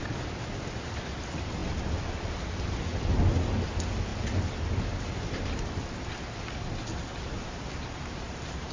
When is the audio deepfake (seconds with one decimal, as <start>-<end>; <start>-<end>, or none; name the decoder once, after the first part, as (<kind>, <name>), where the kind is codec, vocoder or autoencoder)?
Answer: 7.1-8.7 (vocoder, BigVGAN v2)